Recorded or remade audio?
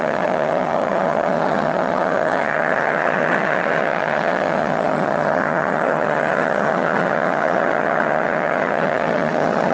remade